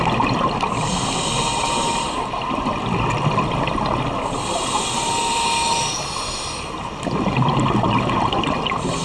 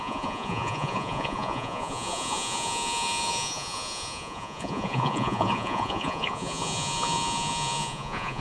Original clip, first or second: first